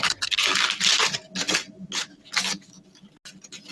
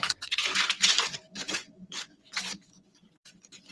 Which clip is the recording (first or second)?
first